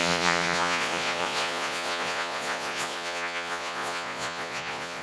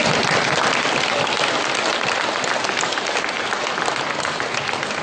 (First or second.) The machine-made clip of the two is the first